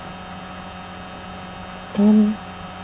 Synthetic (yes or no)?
no